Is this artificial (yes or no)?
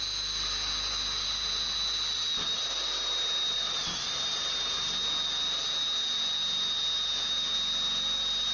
no